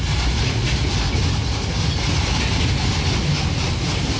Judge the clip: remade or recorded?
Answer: recorded